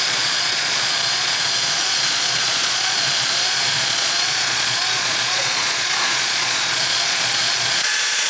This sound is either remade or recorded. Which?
remade